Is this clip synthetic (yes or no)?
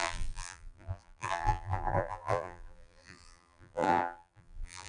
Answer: yes